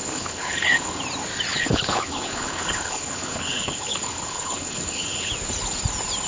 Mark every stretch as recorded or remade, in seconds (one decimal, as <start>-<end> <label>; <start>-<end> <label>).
0.0-1.0 remade; 1.0-1.5 recorded; 1.5-5.3 remade; 5.3-6.3 recorded